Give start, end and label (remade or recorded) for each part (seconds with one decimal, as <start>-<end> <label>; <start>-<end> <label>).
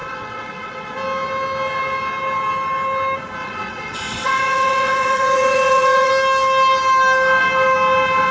0.0-0.9 remade; 0.9-3.4 recorded; 3.4-6.1 remade; 6.1-8.3 recorded